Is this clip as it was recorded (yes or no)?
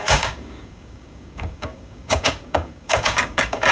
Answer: no